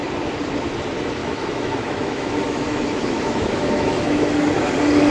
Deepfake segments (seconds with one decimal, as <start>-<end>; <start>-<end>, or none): 1.2-4.3